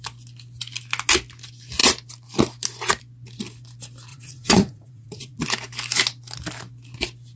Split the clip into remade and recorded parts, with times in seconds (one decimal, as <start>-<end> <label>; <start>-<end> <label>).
0.0-4.1 recorded; 4.1-5.4 remade; 5.4-7.4 recorded